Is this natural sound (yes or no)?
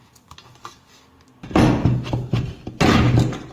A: yes